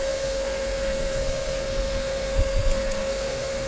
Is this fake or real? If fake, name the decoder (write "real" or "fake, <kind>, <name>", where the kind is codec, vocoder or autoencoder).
fake, codec, SNAC